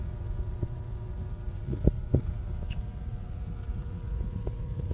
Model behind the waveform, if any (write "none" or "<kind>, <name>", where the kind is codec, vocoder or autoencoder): vocoder, Vocos